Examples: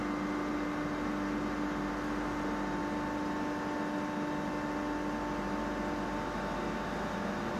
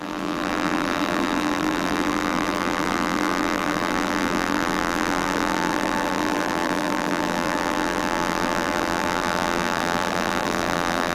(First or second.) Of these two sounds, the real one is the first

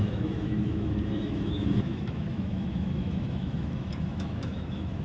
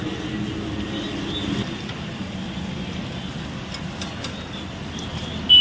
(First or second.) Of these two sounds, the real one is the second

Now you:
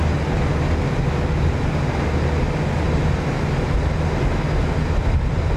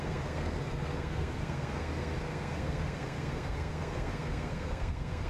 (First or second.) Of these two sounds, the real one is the first